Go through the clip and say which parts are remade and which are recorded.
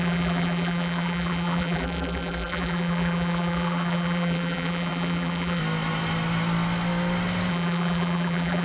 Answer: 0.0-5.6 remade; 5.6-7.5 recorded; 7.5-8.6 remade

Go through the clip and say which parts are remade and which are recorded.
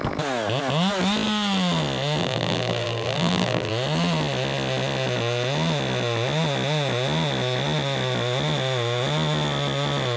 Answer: 0.0-2.2 recorded; 2.2-3.7 remade; 3.7-10.2 recorded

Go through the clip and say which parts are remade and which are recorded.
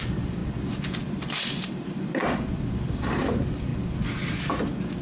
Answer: 0.0-0.4 remade; 0.4-1.1 recorded; 1.1-3.7 remade; 3.7-5.0 recorded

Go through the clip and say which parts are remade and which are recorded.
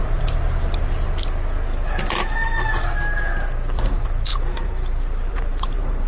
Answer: 0.0-4.3 recorded; 4.3-6.1 remade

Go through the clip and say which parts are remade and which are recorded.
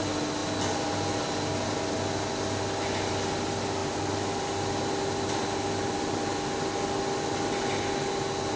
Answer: 0.0-0.4 recorded; 0.4-0.9 remade; 0.9-3.8 recorded; 3.8-6.2 remade; 6.2-8.6 recorded